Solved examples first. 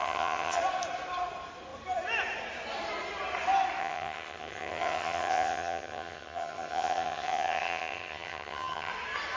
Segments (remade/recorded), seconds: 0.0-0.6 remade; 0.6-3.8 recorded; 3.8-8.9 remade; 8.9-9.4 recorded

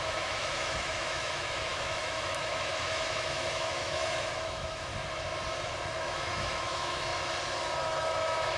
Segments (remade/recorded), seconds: 0.0-4.9 remade; 4.9-6.0 recorded; 6.0-7.1 remade; 7.1-7.8 recorded; 7.8-8.6 remade

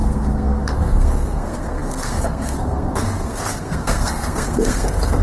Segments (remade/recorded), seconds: 0.0-5.2 remade

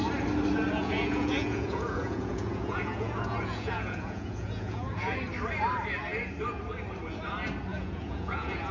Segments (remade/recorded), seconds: 0.0-0.8 recorded; 0.8-5.2 remade; 5.2-7.7 recorded; 7.7-8.7 remade